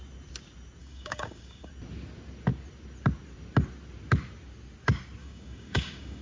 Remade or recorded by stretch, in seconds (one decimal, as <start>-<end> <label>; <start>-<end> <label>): 0.0-0.8 recorded; 0.8-1.7 remade; 1.7-5.2 recorded; 5.2-6.2 remade